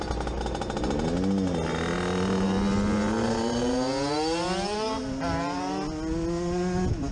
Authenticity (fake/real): real